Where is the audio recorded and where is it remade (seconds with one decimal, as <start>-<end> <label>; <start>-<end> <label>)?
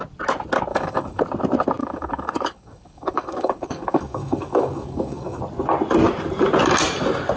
0.0-0.7 recorded; 0.7-1.2 remade; 1.2-1.8 recorded; 1.8-5.4 remade; 5.4-7.4 recorded